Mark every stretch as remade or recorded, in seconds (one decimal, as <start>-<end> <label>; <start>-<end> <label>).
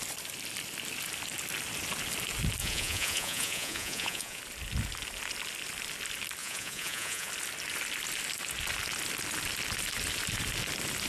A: 0.0-2.6 recorded; 2.6-4.4 remade; 4.4-6.4 recorded; 6.4-7.3 remade; 7.3-11.1 recorded